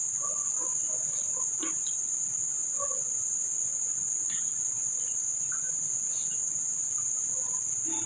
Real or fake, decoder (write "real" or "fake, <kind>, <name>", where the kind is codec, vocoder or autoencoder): real